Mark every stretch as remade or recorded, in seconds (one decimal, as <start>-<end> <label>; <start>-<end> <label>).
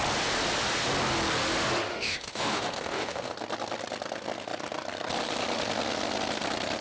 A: 0.0-1.9 recorded; 1.9-3.3 remade; 3.3-6.8 recorded